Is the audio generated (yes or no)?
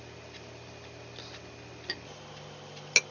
no